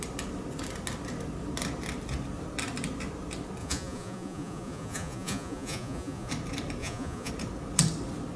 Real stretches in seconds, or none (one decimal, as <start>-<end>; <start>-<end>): 0.0-3.6; 6.3-6.8; 7.3-8.4